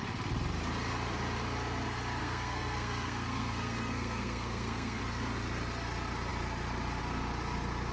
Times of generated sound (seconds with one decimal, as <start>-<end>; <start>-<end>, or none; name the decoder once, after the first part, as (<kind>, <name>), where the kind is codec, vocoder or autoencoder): 2.2-5.0 (codec, SNAC)